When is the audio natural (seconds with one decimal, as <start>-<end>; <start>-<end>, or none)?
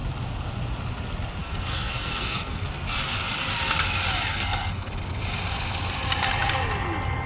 0.0-1.4; 2.6-4.3; 4.9-7.3